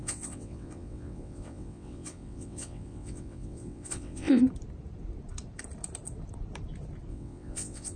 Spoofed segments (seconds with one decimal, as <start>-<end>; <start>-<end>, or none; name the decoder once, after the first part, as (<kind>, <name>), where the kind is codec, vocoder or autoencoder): 0.0-4.4 (vocoder, WaveNeXt); 7.1-8.0